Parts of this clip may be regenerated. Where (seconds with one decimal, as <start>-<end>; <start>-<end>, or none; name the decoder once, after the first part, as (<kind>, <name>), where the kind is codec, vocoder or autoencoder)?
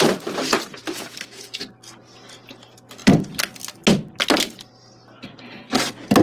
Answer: 0.8-1.6 (autoencoder, DAC-VAE)